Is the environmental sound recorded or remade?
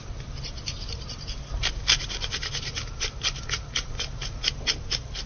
recorded